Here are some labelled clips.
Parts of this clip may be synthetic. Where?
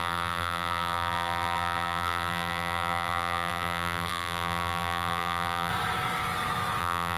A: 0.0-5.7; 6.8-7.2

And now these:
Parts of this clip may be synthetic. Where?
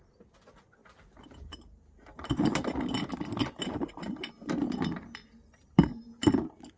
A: none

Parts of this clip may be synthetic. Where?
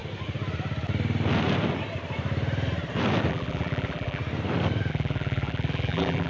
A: 3.3-4.2; 4.9-6.3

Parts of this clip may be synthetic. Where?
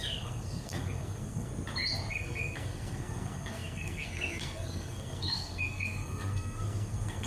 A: 0.0-1.5; 2.1-7.3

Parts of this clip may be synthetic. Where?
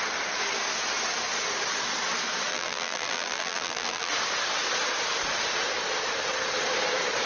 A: 2.5-4.1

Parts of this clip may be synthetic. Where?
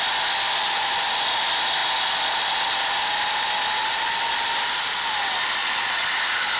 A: 5.6-6.1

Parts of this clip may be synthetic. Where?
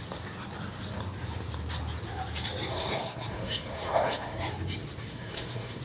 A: 2.7-4.5; 5.1-5.8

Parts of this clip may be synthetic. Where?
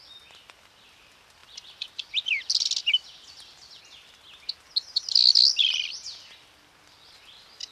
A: none